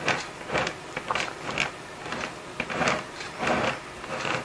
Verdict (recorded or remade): remade